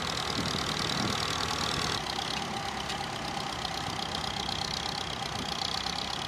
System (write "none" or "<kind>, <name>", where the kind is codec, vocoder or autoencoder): none